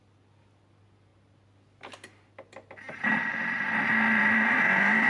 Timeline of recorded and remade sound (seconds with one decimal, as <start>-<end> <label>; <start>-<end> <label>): 0.0-5.1 recorded